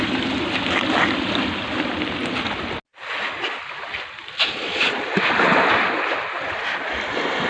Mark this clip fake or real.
real